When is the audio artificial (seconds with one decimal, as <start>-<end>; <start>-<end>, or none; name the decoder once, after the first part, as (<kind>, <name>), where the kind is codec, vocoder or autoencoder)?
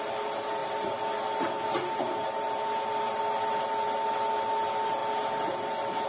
5.0-6.1 (vocoder, BigVGAN v2)